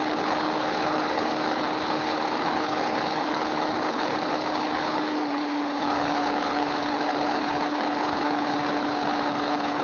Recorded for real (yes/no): no